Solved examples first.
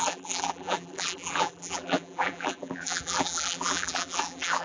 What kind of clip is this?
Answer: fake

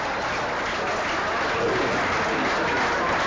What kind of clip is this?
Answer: real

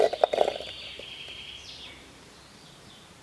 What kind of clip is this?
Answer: fake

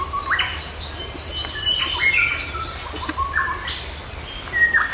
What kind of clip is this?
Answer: real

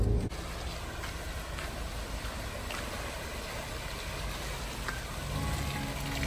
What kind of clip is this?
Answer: real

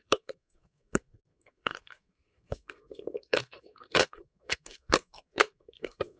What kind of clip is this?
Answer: fake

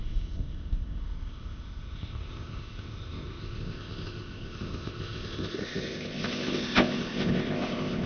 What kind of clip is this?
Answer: fake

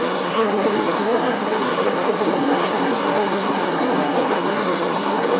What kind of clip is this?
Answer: fake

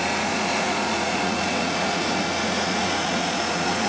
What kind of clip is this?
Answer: fake